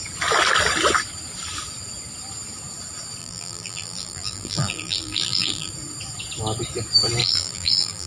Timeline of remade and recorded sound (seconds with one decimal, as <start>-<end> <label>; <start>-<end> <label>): 0.0-3.2 recorded; 3.2-5.7 remade; 5.7-7.2 recorded; 7.2-8.1 remade